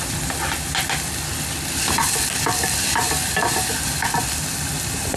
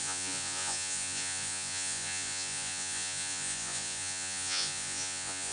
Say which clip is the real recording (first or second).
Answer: first